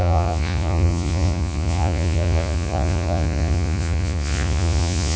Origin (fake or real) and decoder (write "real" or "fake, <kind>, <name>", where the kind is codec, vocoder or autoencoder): fake, vocoder, Vocos